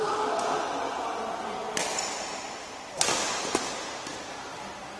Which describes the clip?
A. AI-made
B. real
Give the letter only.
B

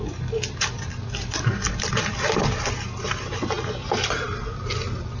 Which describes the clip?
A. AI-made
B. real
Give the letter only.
A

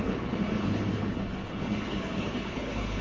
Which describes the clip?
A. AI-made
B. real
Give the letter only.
A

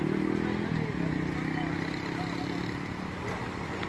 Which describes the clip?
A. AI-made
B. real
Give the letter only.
B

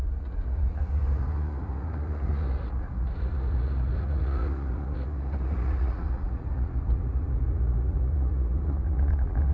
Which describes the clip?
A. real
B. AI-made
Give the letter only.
B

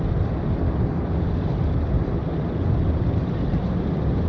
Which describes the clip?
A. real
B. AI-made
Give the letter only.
A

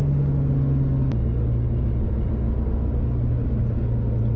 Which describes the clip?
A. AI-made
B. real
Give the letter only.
B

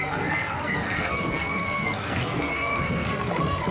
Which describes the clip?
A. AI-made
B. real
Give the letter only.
A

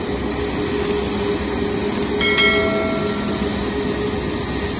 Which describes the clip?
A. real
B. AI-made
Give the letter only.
A